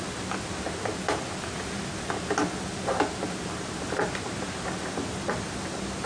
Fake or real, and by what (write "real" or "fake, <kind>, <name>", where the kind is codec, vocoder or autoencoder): real